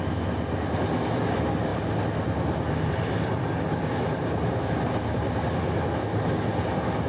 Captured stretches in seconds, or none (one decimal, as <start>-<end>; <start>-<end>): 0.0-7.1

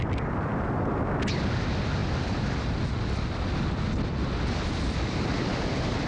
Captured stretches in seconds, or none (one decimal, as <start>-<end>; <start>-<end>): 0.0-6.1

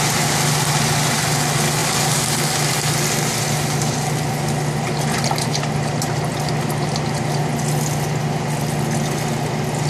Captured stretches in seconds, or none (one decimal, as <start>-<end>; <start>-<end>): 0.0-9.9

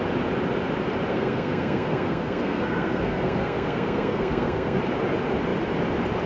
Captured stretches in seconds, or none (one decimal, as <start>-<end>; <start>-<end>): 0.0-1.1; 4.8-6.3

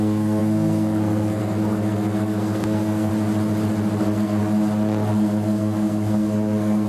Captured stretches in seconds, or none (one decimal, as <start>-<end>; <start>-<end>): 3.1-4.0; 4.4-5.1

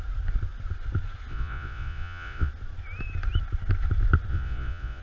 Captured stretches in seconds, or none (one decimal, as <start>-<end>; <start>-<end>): 0.0-1.3; 2.5-4.3

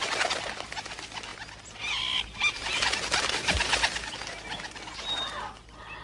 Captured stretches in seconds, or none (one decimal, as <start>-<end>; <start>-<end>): 0.0-6.0